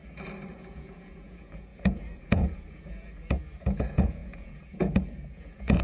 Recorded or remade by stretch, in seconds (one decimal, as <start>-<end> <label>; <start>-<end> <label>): 0.0-0.5 recorded; 0.5-5.8 remade